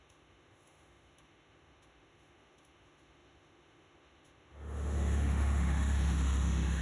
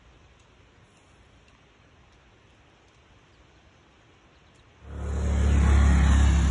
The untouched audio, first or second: second